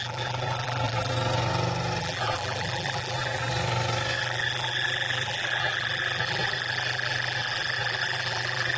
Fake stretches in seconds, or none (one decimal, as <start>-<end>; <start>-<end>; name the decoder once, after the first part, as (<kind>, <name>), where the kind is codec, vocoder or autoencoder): 0.0-1.1 (vocoder, BigVGAN v2); 2.0-3.5; 4.2-8.8